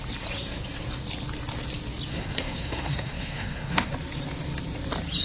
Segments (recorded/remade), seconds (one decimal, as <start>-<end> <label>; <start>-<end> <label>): 0.0-2.1 recorded; 2.1-3.9 remade; 3.9-5.2 recorded